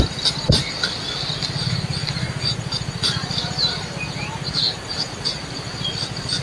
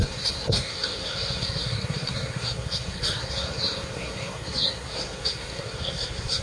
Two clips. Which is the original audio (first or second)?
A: first